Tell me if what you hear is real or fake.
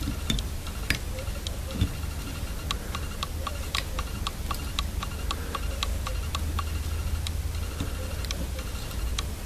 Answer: real